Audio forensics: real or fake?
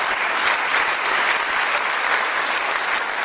real